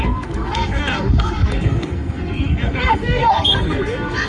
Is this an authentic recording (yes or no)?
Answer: no